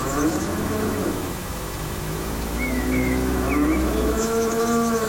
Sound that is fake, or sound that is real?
fake